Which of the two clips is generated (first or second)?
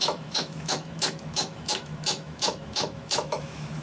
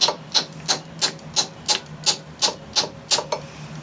first